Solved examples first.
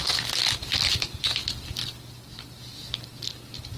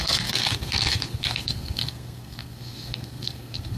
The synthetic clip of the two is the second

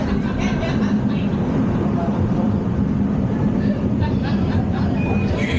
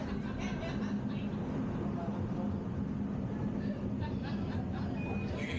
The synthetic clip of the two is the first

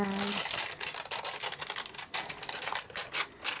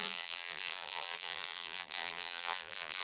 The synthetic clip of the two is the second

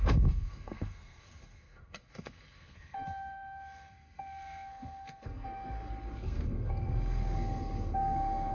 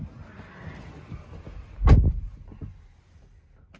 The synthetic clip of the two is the first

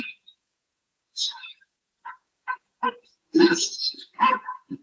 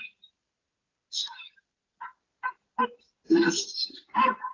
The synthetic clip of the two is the first